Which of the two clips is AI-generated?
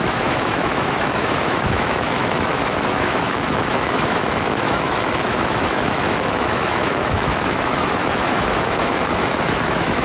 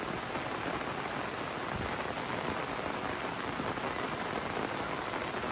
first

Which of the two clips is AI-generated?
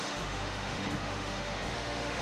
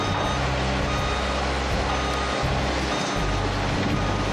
first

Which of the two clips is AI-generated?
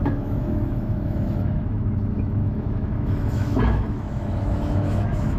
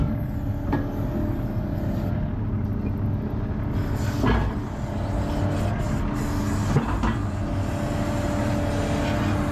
first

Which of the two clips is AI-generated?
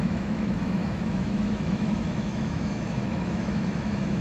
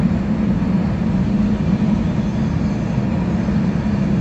first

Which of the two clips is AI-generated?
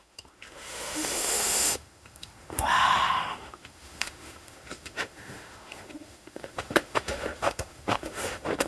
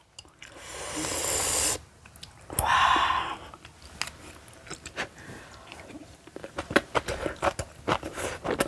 first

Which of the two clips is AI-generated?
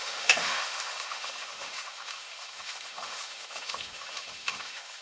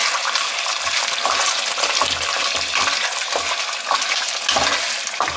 first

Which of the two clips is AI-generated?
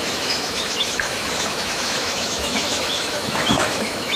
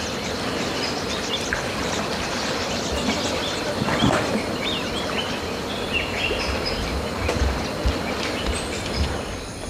first